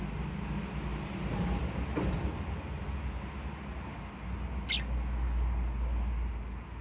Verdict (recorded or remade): recorded